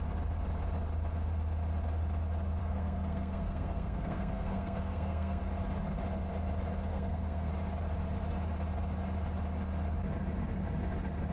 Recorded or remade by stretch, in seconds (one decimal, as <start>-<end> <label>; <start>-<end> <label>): 0.0-2.6 recorded; 2.6-5.4 remade; 5.4-6.9 recorded; 6.9-7.5 remade; 7.5-11.3 recorded

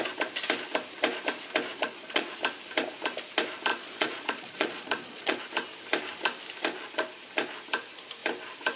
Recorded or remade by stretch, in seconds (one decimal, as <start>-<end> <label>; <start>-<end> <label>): 0.0-1.7 recorded; 1.7-2.4 remade; 2.4-3.7 recorded; 3.7-5.4 remade; 5.4-8.8 recorded

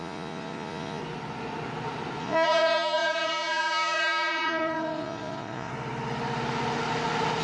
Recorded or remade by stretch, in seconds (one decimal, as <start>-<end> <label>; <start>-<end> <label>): 0.0-1.0 remade; 1.0-2.2 recorded; 2.2-5.7 remade; 5.7-7.4 recorded

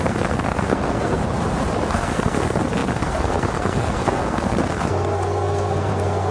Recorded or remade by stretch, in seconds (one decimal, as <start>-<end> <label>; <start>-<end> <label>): 0.0-1.2 remade; 1.2-1.9 recorded; 1.9-6.3 remade

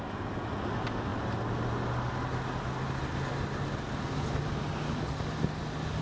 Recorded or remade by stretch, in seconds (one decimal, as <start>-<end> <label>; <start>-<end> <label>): 0.0-6.0 recorded

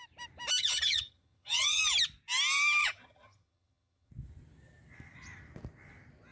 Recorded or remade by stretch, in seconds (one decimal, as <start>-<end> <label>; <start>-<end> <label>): 0.0-0.6 recorded; 0.6-1.8 remade; 1.8-2.8 recorded; 2.8-4.1 remade; 4.1-6.3 recorded

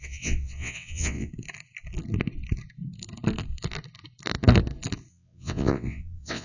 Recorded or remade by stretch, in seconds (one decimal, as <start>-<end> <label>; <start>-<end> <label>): 0.0-1.3 remade; 1.3-5.1 recorded; 5.1-6.4 remade

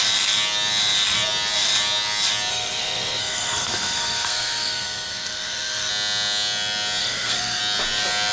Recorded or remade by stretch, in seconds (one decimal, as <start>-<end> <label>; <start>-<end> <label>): 0.0-2.5 recorded; 2.5-5.9 remade; 5.9-7.0 recorded; 7.0-7.6 remade; 7.6-8.3 recorded